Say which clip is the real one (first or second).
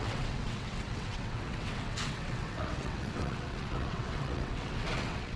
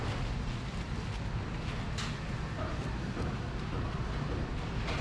second